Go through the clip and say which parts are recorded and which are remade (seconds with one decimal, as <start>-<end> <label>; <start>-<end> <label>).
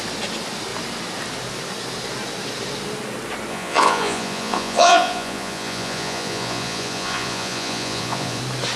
0.0-3.5 recorded; 3.5-8.4 remade; 8.4-8.8 recorded